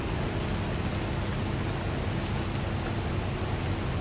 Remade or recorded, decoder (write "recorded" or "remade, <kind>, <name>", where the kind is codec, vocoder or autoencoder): recorded